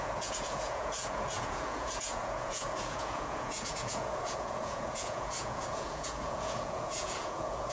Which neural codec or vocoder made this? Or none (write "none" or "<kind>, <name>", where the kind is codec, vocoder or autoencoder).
vocoder, Vocos